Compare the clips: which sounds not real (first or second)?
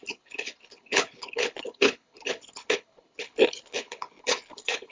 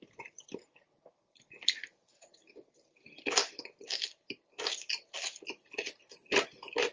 first